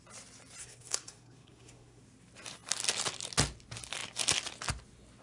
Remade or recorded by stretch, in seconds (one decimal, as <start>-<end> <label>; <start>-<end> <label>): 0.0-0.6 recorded; 0.6-2.0 remade; 2.0-5.2 recorded